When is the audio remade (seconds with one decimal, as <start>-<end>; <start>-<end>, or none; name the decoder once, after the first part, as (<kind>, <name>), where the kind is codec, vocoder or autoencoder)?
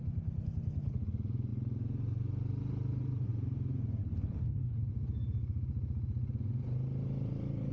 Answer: 4.0-4.8 (codec, HILCodec)